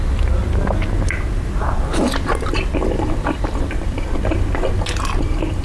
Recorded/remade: recorded